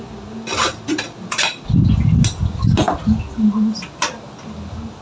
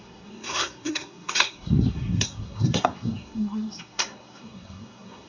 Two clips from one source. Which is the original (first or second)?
first